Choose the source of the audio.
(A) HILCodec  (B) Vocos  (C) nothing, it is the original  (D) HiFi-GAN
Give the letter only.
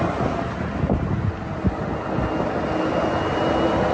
C